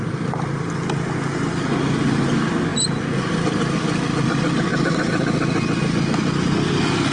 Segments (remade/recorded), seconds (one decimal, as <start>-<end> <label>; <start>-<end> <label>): 0.0-7.1 recorded